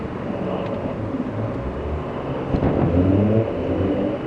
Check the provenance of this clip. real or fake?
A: real